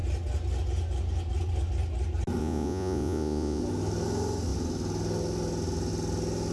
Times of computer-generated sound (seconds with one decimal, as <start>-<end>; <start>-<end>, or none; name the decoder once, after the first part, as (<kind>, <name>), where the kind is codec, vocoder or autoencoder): 2.4-3.6 (vocoder, Vocos)

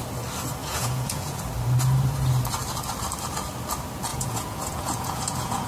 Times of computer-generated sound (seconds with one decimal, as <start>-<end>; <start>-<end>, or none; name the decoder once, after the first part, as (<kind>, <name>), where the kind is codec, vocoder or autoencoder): 0.6-1.4 (vocoder, Vocos); 4.1-5.7